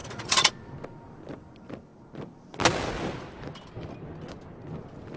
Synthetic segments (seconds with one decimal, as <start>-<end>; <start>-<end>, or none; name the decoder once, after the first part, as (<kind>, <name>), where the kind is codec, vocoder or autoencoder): 0.0-0.5 (vocoder, Vocos)